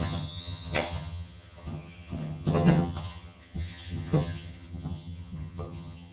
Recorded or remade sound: remade